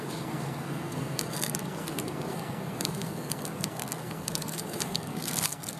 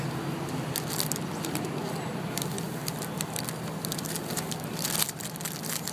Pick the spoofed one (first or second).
first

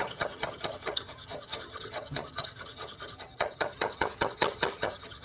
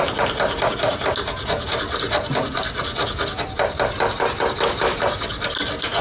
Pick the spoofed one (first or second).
first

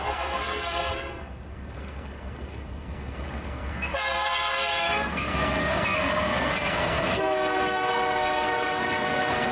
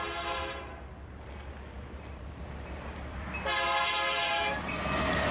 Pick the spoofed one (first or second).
first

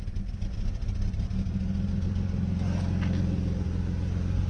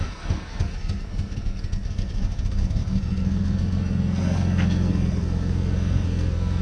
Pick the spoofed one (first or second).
second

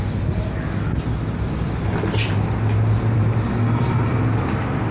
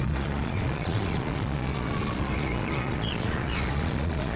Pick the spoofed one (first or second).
second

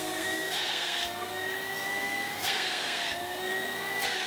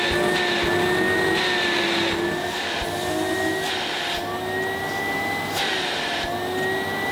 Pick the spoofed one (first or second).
first